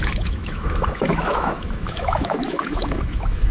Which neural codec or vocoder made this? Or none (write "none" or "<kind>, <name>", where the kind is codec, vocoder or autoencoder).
autoencoder, DAC-VAE